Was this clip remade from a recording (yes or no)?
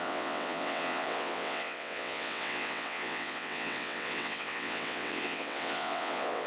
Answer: yes